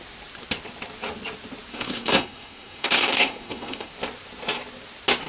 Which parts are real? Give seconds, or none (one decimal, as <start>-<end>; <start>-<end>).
0.0-1.7; 3.9-5.3